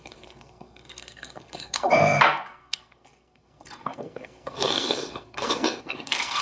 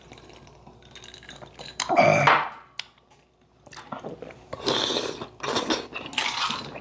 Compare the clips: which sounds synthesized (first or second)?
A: first